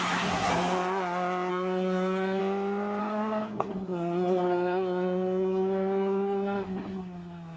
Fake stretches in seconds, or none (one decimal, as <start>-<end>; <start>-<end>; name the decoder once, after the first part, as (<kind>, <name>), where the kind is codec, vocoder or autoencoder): 0.0-0.5 (codec, SNAC); 1.5-2.4; 3.0-7.6